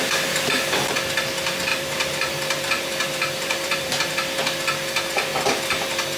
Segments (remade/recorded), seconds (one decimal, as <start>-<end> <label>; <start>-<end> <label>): 0.0-1.7 recorded; 1.7-4.1 remade; 4.1-6.2 recorded

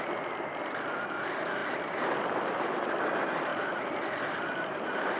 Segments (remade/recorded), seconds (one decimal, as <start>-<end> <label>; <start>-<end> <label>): 0.0-5.2 recorded

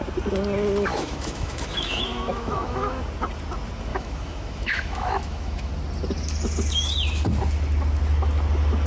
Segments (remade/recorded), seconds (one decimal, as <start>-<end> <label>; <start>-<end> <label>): 0.0-0.9 recorded; 0.9-3.0 remade; 3.0-3.9 recorded; 3.9-5.7 remade; 5.7-8.9 recorded

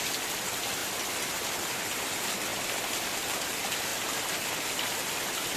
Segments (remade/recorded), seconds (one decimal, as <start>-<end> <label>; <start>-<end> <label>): 0.0-2.5 recorded; 2.5-3.4 remade; 3.4-5.6 recorded

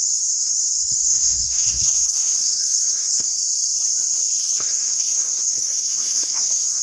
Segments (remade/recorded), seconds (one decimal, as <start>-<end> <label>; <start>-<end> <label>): 0.0-3.4 remade; 3.4-4.4 recorded; 4.4-6.8 remade

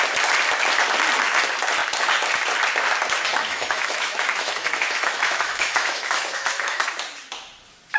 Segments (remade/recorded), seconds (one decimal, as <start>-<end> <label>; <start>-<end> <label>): 0.0-3.3 recorded; 3.3-6.8 remade; 6.8-8.0 recorded